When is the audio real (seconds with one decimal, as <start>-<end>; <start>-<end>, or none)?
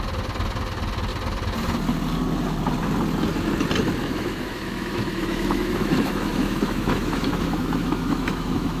0.0-4.0